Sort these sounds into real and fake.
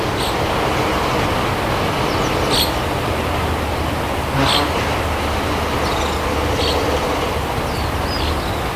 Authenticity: real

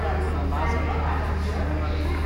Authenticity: real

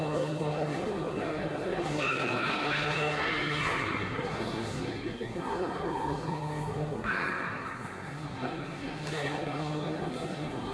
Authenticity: fake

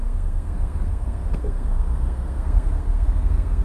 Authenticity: fake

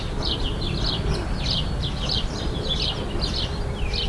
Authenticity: real